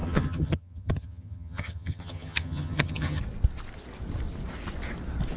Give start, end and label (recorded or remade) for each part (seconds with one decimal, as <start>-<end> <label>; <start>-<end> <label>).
0.0-3.2 remade; 3.2-5.4 recorded